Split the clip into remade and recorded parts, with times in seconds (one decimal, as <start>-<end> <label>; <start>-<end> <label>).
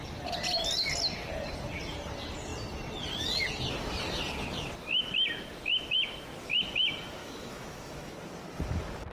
0.0-7.2 recorded; 7.2-8.1 remade; 8.1-9.1 recorded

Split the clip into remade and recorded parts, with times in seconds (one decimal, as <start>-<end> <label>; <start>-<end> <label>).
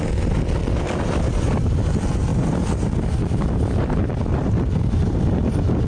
0.0-0.6 recorded; 0.6-1.4 remade; 1.4-2.3 recorded; 2.3-5.9 remade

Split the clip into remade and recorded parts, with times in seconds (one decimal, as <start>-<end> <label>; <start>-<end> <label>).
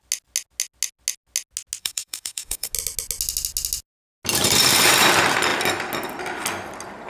0.0-1.8 recorded; 1.8-2.7 remade; 2.7-7.1 recorded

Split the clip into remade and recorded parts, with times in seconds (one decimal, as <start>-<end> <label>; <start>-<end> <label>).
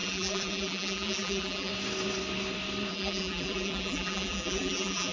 0.0-1.7 remade; 1.7-2.9 recorded; 2.9-5.1 remade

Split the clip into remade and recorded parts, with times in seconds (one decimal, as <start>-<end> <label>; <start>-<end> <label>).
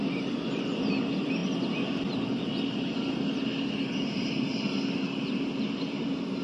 0.0-6.4 recorded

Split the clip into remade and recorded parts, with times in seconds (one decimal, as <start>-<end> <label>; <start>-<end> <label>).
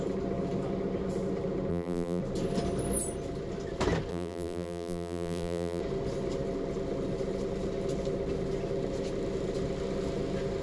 0.0-1.7 recorded; 1.7-2.2 remade; 2.2-4.1 recorded; 4.1-5.8 remade; 5.8-10.6 recorded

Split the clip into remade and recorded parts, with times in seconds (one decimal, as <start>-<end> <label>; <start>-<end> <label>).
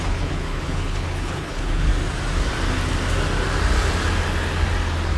0.0-1.9 remade; 1.9-5.2 recorded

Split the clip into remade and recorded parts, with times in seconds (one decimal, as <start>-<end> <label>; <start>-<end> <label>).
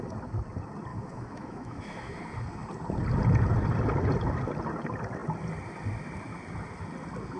0.0-0.9 recorded; 0.9-2.2 remade; 2.2-7.4 recorded